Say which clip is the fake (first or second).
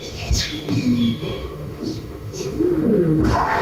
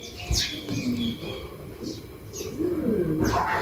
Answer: first